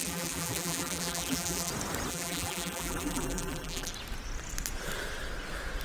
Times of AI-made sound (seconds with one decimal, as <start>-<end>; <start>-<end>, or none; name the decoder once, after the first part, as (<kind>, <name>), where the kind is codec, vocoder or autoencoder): 0.0-1.7 (vocoder, BigVGAN v2); 2.1-3.9